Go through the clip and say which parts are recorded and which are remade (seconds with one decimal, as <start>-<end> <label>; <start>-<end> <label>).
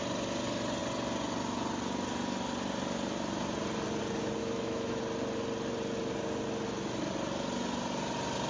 0.0-4.4 recorded; 4.4-5.0 remade; 5.0-8.5 recorded